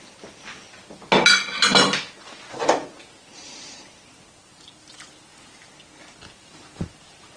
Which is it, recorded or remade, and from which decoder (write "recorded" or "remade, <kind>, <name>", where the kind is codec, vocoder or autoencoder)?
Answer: recorded